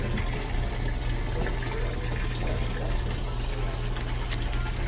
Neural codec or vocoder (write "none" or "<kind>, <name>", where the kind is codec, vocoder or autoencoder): none